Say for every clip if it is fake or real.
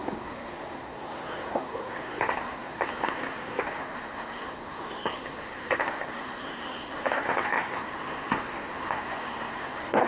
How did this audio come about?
fake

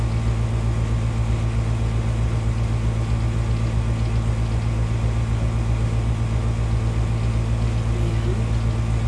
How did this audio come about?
real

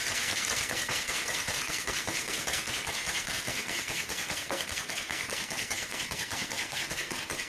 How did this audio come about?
fake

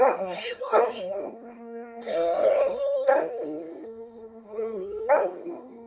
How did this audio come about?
fake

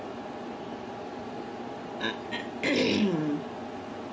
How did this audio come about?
real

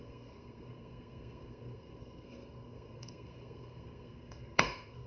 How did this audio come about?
fake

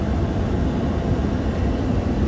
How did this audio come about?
real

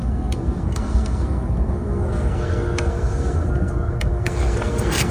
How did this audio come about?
fake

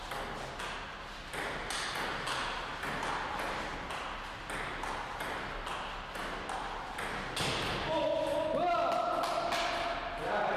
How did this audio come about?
real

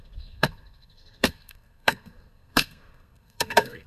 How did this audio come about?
fake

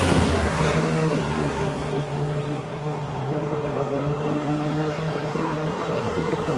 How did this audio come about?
fake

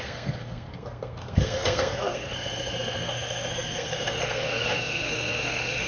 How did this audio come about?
fake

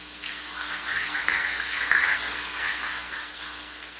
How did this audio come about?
fake